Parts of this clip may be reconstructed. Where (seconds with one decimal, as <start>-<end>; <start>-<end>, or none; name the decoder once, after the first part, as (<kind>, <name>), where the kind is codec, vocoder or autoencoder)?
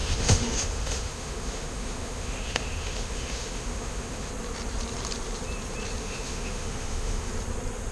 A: 0.0-4.3 (autoencoder, DAC-VAE); 6.0-7.3